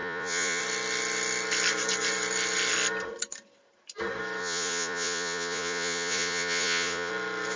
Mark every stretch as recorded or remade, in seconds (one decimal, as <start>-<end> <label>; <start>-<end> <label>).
0.0-0.6 remade; 0.6-4.4 recorded; 4.4-7.1 remade; 7.1-7.6 recorded